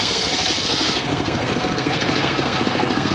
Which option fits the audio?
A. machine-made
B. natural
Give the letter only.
A